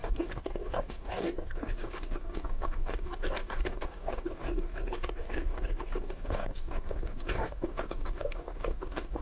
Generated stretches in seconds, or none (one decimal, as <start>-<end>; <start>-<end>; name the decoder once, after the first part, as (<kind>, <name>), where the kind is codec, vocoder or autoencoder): 0.0-9.2 (codec, DAC)